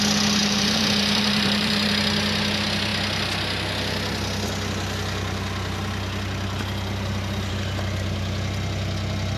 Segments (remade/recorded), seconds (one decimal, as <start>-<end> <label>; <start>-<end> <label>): 0.0-0.4 recorded; 0.4-1.9 remade; 1.9-9.4 recorded